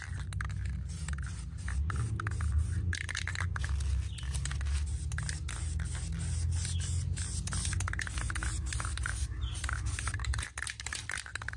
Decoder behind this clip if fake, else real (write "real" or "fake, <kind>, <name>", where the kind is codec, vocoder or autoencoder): real